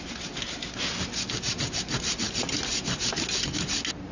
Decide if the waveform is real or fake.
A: real